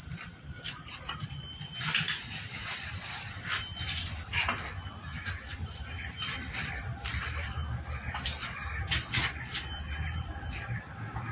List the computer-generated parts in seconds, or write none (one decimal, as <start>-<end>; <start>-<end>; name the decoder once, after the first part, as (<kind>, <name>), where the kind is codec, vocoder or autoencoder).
0.0-7.6 (vocoder, BigVGAN v2); 9.1-11.3